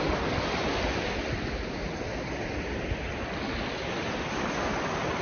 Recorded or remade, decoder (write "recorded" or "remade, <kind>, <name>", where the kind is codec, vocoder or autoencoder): recorded